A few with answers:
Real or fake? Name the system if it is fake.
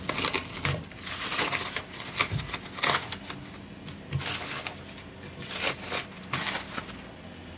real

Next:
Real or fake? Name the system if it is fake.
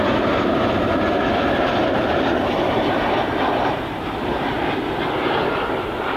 fake, vocoder, BigVGAN v2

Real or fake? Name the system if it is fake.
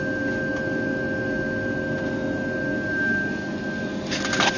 real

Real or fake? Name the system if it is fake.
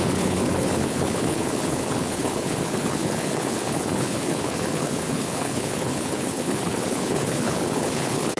fake, codec, HILCodec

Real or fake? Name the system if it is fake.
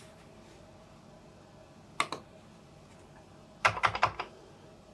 real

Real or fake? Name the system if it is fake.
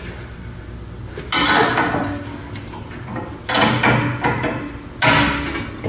real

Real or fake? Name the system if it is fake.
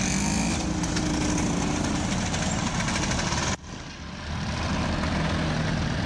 real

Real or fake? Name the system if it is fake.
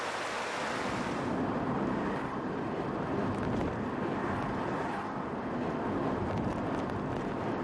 real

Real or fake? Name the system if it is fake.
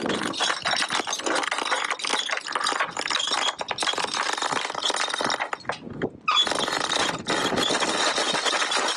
real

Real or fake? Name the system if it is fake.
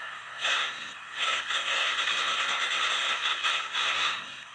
fake, codec, SNAC